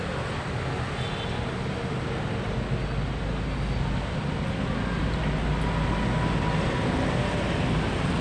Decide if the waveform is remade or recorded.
recorded